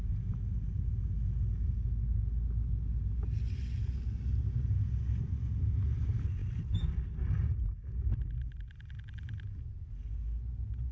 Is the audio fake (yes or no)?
no